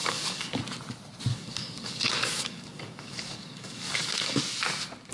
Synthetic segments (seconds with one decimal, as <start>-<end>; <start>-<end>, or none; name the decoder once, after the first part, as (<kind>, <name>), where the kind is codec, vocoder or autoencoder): 0.0-0.6 (codec, DAC); 1.3-4.4

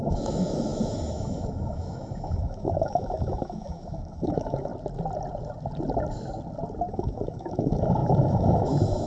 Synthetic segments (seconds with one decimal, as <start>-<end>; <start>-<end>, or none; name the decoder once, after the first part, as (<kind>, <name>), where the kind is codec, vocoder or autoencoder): 0.0-4.7 (autoencoder, DAC-VAE); 6.9-9.1

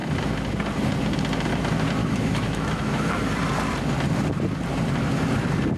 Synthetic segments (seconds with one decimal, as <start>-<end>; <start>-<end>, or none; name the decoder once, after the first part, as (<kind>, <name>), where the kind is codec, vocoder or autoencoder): 2.0-3.3 (autoencoder, DAC-VAE)

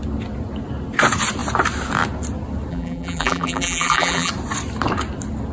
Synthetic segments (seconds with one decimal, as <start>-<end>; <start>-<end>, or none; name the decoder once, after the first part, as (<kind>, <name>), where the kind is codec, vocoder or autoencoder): 2.7-4.3 (vocoder, BigVGAN v2)

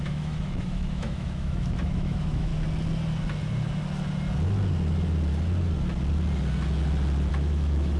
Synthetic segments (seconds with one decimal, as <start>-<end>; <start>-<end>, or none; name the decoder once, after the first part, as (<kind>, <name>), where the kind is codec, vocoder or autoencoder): 0.0-2.5 (autoencoder, DAC-VAE); 7.3-8.0

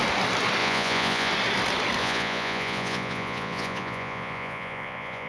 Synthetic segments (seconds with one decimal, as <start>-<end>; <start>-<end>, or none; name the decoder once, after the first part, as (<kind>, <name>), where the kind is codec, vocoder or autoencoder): 0.6-1.3 (vocoder, Vocos); 2.0-5.3

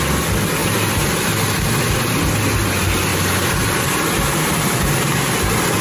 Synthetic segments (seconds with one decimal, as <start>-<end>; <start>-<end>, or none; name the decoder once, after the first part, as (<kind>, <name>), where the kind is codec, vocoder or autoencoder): 0.6-1.3 (vocoder, BigVGAN v2); 3.1-5.3

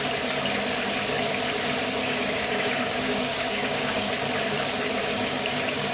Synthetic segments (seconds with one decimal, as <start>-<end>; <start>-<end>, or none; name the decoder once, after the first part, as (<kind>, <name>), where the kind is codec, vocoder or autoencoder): 2.0-4.1 (codec, DAC); 5.0-5.9